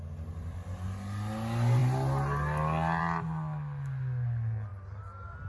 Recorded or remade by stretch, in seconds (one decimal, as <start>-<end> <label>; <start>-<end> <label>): 0.0-5.5 recorded